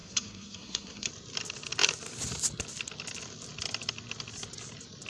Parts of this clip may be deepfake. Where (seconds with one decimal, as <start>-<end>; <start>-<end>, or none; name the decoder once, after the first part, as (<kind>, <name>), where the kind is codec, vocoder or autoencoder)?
0.0-1.1 (codec, SNAC)